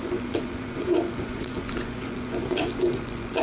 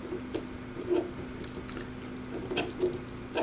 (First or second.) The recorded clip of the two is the second